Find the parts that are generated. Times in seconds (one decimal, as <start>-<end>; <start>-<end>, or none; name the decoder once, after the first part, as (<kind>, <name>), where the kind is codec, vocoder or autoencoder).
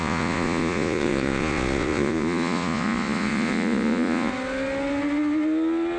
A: 0.0-4.3 (vocoder, Vocos)